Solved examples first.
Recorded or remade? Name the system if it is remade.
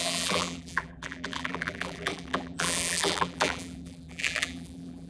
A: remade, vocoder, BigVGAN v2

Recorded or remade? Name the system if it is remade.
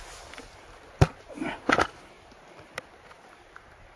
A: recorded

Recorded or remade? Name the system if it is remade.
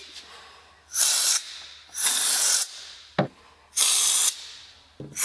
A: recorded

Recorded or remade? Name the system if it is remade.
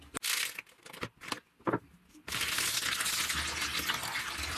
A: recorded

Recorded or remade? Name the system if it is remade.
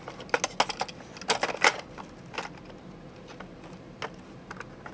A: recorded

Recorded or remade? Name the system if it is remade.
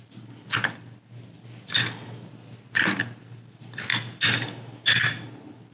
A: recorded